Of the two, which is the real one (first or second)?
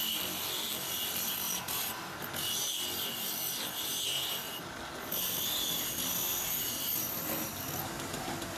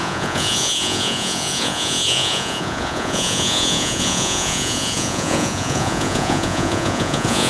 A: first